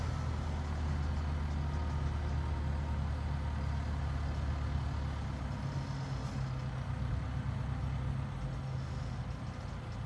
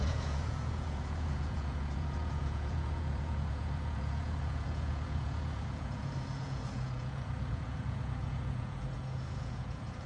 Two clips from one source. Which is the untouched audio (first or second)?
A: first